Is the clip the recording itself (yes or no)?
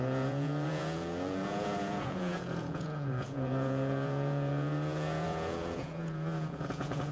no